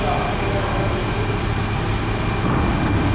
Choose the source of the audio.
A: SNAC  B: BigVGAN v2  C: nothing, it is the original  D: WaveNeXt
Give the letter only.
C